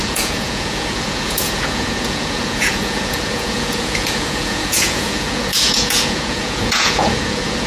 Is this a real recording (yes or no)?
no